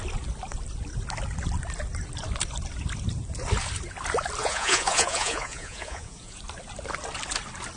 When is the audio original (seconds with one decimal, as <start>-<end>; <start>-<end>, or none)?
0.0-4.4; 6.4-7.8